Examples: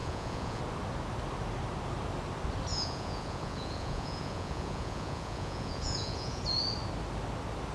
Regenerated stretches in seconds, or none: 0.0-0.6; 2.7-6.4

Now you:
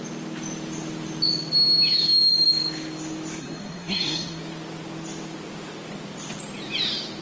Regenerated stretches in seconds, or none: 3.4-4.4

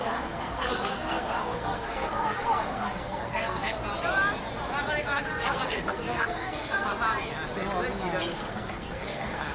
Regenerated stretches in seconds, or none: 0.0-3.8; 5.0-6.9; 8.3-9.5

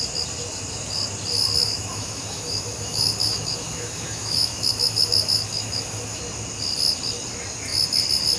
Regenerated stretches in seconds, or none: 1.6-6.2

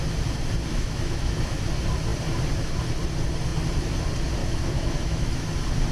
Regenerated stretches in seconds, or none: 0.7-1.6; 4.4-5.5

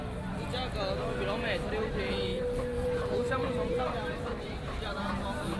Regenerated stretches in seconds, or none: 0.0-0.6; 1.7-5.6

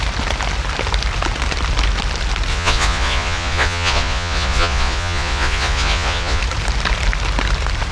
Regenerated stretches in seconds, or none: 2.5-6.4

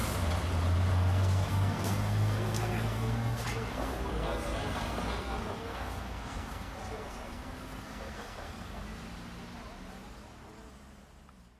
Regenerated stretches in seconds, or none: 0.9-8.8